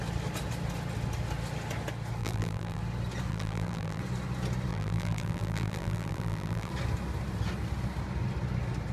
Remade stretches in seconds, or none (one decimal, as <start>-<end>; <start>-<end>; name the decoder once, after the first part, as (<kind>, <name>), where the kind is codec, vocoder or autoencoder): 2.2-2.8 (vocoder, BigVGAN v2); 3.3-4.0; 4.7-6.7